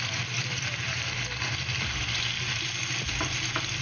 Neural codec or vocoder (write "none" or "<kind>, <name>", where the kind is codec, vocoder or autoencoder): none